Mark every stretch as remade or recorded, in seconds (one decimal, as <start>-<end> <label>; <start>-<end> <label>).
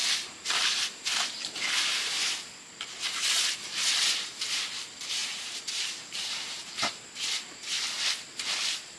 0.0-2.5 remade; 2.5-5.2 recorded; 5.2-7.0 remade; 7.0-9.0 recorded